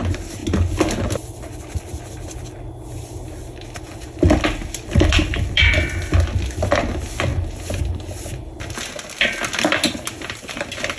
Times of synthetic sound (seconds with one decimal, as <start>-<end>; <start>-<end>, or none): none